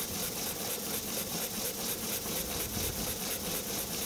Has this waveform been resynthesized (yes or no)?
yes